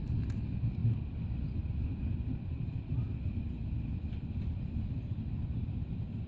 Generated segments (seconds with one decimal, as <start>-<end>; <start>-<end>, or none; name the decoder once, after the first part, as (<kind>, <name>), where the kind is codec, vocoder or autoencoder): none